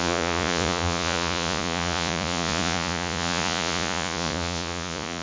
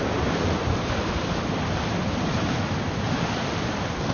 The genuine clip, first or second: second